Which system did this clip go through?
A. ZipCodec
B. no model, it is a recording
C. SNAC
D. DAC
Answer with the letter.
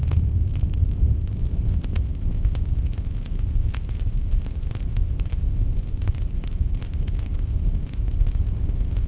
A